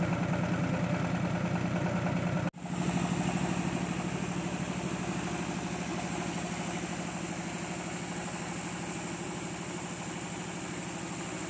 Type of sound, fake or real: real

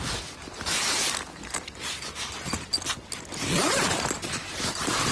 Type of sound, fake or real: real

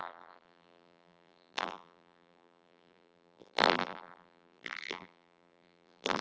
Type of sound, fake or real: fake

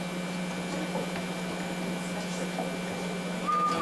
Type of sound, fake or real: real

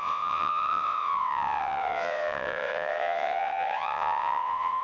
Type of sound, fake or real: fake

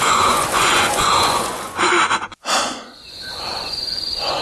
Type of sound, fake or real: fake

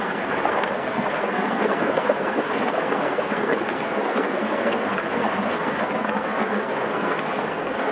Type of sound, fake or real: fake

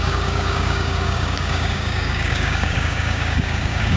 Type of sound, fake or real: fake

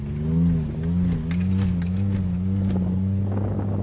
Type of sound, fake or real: real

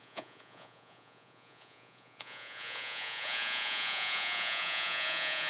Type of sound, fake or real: fake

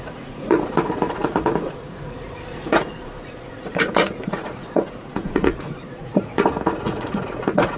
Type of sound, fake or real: fake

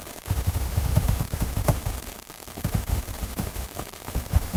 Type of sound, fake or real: fake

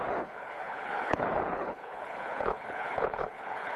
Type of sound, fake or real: fake